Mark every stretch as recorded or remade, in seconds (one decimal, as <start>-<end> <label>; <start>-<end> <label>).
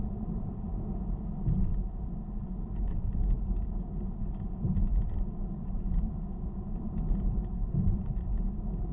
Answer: 0.0-0.7 remade; 0.7-5.9 recorded; 5.9-8.9 remade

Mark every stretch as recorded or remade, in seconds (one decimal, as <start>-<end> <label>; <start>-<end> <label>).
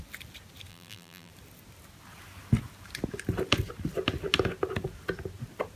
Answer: 0.0-0.7 recorded; 0.7-1.3 remade; 1.3-5.8 recorded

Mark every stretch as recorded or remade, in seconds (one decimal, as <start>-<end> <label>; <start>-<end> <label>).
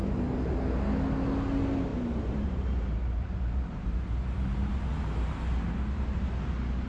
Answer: 0.0-0.5 remade; 0.5-1.9 recorded; 1.9-5.7 remade; 5.7-6.9 recorded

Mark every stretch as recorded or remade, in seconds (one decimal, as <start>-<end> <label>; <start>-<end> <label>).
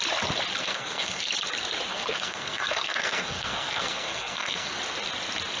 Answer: 0.0-0.6 recorded; 0.6-1.3 remade; 1.3-1.9 recorded; 1.9-4.8 remade; 4.8-5.6 recorded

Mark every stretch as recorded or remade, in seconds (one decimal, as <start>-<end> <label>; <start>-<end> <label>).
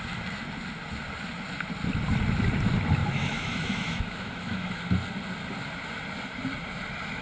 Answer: 0.0-3.0 recorded; 3.0-4.8 remade; 4.8-7.2 recorded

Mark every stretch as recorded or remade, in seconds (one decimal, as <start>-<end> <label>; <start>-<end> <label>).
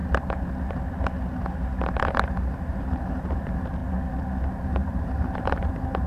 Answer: 0.0-2.1 recorded; 2.1-3.8 remade; 3.8-4.5 recorded; 4.5-6.1 remade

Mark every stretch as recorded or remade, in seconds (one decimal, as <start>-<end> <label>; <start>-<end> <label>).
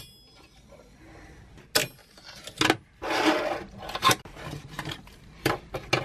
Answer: 0.0-4.0 recorded; 4.0-5.3 remade; 5.3-6.0 recorded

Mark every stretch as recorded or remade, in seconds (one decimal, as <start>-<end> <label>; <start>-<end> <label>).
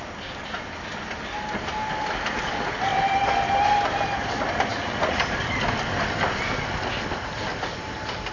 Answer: 0.0-4.7 recorded; 4.7-5.2 remade; 5.2-8.3 recorded